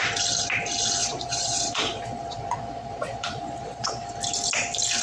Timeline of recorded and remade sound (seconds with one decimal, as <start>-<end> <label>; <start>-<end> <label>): 0.0-1.0 recorded; 1.0-4.0 remade; 4.0-5.0 recorded